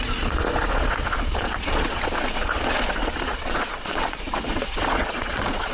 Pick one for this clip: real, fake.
fake